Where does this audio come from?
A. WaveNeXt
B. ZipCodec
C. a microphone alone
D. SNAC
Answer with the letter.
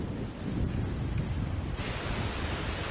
C